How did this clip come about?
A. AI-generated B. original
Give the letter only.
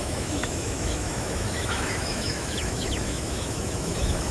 A